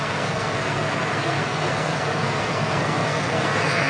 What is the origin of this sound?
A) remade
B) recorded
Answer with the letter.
A